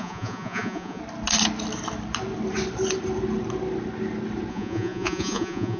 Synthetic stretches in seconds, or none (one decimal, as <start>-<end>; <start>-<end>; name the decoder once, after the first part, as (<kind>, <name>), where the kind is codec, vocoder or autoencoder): 0.0-1.0 (vocoder, Vocos); 4.5-5.8